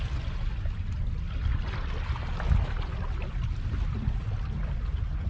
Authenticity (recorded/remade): recorded